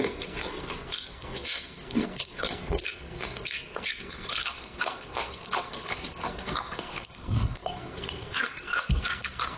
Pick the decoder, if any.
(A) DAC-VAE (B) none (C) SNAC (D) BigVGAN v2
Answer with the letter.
C